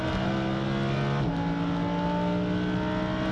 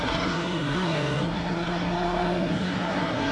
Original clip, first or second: first